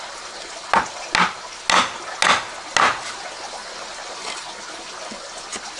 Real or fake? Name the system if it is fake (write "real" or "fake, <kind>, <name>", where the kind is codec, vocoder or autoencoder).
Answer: real